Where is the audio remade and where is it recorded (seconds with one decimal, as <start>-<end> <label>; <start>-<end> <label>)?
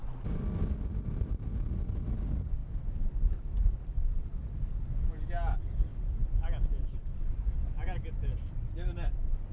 0.0-9.5 recorded